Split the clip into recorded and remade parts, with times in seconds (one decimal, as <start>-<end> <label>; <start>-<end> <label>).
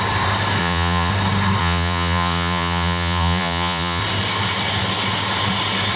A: 0.0-0.6 recorded; 0.6-1.1 remade; 1.1-1.6 recorded; 1.6-4.0 remade; 4.0-6.0 recorded